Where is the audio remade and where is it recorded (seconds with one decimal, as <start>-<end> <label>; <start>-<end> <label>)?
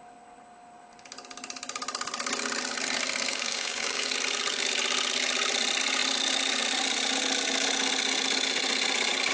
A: 0.0-3.3 recorded; 3.3-4.1 remade; 4.1-9.3 recorded